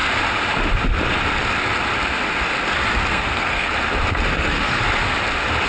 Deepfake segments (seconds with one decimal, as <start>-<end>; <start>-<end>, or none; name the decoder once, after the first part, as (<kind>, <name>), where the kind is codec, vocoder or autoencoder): 3.1-3.7 (codec, SNAC); 4.3-4.8